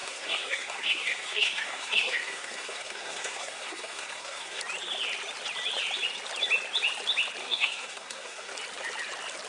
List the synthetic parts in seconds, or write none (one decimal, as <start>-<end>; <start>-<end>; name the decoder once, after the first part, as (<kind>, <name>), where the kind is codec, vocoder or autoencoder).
0.0-4.6 (codec, SNAC); 7.4-8.5